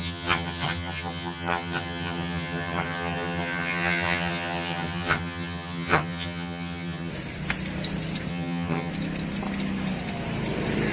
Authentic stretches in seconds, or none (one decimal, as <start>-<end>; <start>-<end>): 7.1-8.3; 8.9-10.9